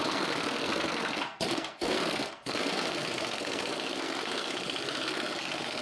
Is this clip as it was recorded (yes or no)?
no